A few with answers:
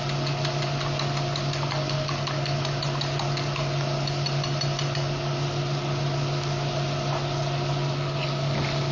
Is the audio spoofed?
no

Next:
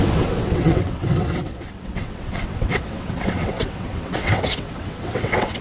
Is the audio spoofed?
yes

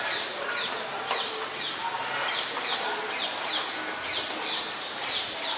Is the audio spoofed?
no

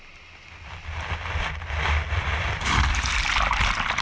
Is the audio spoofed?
no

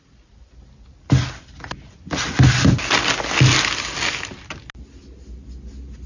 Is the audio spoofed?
no